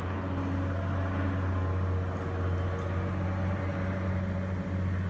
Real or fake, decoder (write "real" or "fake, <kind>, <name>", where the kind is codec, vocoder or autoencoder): real